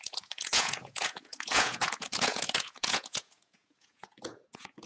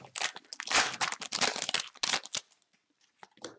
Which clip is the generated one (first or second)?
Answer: first